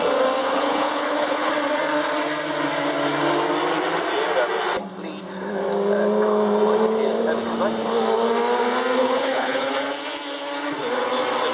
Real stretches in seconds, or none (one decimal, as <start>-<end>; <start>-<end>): 0.0-0.4; 1.5-9.0; 9.7-11.5